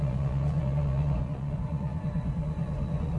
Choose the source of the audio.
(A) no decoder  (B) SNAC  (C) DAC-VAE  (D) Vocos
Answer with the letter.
D